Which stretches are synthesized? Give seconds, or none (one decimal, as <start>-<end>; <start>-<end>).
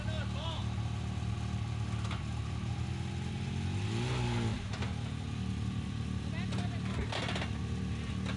none